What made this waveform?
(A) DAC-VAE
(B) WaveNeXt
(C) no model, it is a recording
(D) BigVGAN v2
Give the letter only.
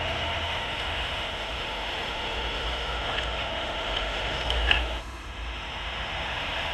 A